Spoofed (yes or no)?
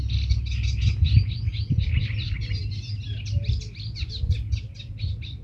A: no